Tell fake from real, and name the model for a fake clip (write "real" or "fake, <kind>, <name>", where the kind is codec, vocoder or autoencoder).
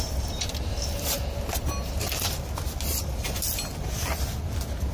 real